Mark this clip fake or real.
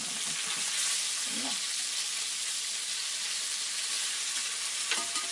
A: real